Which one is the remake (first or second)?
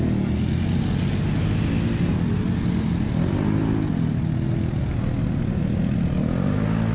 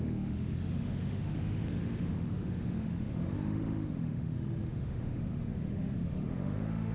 second